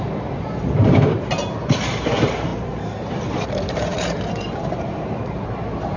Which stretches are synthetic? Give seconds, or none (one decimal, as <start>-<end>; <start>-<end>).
0.0-6.0